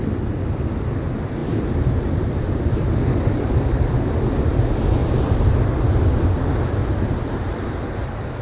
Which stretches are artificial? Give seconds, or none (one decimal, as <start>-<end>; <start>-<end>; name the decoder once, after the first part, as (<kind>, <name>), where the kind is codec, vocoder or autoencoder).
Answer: 1.4-4.0 (vocoder, BigVGAN v2); 5.0-5.6; 6.8-8.4